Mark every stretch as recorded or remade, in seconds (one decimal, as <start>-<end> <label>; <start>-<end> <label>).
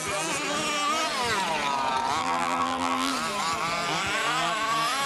0.0-2.2 recorded; 2.2-3.1 remade; 3.1-5.1 recorded